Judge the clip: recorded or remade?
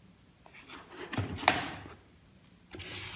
recorded